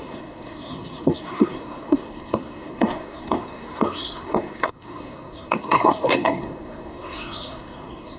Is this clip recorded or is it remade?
remade